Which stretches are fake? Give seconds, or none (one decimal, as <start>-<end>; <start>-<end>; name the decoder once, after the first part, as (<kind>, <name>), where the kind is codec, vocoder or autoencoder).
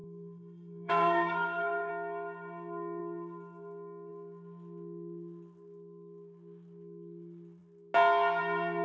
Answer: 0.0-1.9 (codec, SNAC)